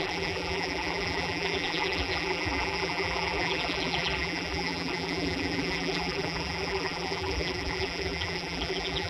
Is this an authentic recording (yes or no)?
no